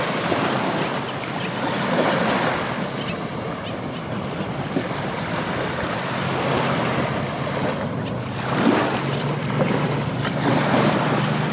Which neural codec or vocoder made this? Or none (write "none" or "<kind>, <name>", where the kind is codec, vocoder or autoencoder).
none